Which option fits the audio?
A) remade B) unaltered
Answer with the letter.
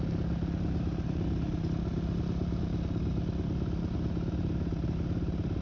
B